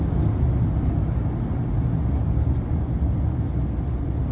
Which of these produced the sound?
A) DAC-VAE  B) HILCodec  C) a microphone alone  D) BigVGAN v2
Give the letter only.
C